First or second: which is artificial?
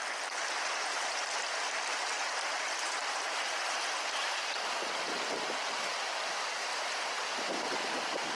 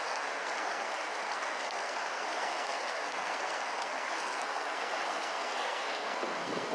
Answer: second